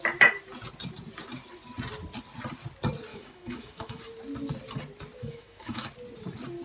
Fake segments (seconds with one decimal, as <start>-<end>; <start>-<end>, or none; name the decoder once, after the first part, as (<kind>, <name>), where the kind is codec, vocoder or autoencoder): 3.1-4.0 (autoencoder, DAC-VAE); 5.2-5.9